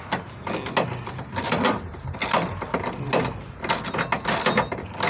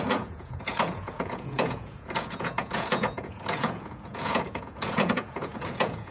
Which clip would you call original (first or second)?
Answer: first